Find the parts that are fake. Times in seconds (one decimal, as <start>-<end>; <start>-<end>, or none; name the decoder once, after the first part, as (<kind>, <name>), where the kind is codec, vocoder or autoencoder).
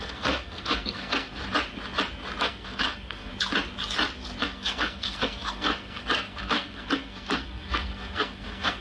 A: 0.0-1.4 (codec, SNAC); 2.4-3.3; 4.4-8.8